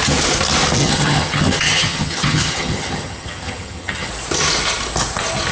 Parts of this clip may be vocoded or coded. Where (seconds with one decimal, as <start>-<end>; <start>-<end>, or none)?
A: 0.8-4.1